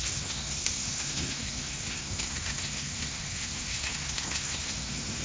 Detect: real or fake fake